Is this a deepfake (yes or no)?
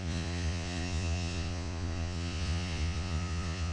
yes